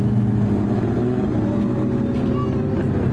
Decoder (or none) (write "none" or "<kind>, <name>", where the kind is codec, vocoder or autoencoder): none